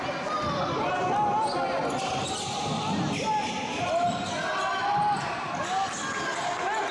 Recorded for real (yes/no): yes